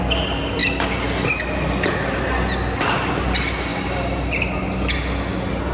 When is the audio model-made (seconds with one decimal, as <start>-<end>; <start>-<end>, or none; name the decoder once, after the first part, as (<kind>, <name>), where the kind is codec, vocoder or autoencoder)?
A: none